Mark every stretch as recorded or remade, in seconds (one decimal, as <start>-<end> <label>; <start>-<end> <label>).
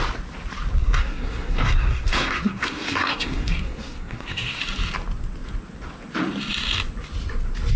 0.0-0.8 recorded; 0.8-4.6 remade; 4.6-7.8 recorded